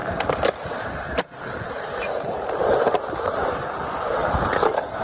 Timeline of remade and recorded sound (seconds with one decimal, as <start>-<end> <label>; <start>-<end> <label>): 0.0-4.2 remade; 4.2-5.0 recorded